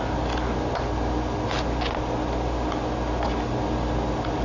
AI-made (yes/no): no